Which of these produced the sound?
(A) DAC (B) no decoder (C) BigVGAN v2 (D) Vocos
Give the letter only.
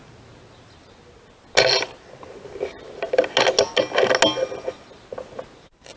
B